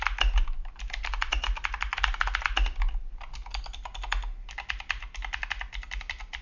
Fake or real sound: real